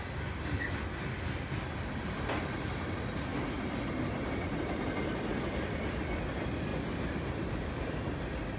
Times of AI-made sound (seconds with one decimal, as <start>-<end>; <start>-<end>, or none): none